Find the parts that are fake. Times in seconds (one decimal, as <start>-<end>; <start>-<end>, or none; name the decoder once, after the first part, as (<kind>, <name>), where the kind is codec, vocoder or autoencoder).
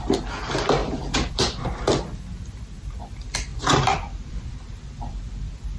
0.8-1.8 (vocoder, BigVGAN v2); 3.5-5.8